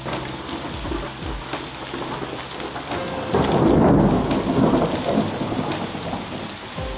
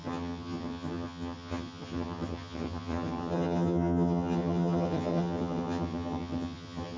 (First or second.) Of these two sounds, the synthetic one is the second